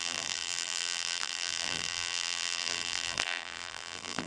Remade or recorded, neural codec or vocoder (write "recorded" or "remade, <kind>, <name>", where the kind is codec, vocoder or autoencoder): remade, vocoder, BigVGAN v2